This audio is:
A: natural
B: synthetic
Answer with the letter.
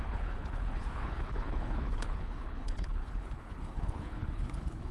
B